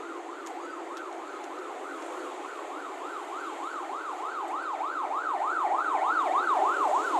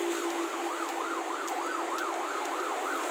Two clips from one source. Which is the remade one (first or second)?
first